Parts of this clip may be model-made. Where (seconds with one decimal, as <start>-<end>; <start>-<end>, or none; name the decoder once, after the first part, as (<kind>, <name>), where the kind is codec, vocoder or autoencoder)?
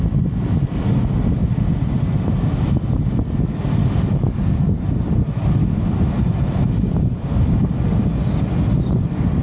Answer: none